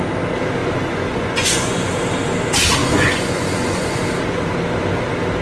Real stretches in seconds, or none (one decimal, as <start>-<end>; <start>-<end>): 0.0-0.6; 1.9-2.8; 4.0-5.4